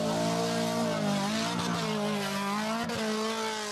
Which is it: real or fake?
real